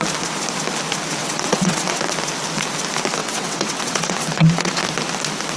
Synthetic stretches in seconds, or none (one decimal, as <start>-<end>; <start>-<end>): 1.2-2.0; 3.2-4.8